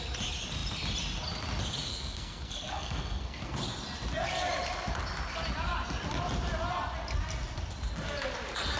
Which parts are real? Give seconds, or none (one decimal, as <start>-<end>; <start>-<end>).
0.0-1.9; 3.6-8.8